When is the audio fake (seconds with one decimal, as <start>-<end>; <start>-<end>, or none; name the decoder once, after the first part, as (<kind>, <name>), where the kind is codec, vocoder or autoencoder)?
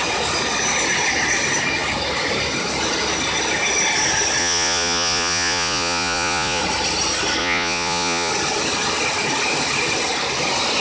4.4-6.6 (vocoder, Vocos); 7.4-8.3